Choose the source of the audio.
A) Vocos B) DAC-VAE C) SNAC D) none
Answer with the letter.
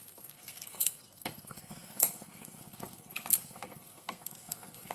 C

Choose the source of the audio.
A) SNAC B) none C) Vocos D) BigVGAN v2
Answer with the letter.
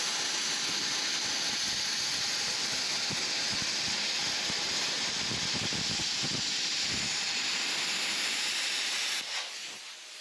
B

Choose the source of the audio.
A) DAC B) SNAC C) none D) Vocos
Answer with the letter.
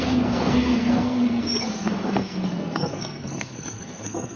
B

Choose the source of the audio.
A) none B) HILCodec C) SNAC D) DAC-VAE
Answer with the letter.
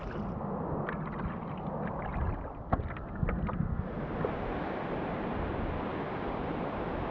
A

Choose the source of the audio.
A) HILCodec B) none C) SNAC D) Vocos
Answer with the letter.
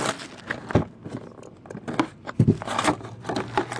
B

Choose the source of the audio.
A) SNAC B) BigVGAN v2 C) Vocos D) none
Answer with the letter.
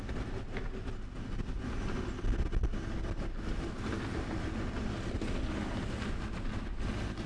D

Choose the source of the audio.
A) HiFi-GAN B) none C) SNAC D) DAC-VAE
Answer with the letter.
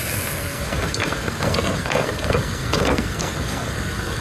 C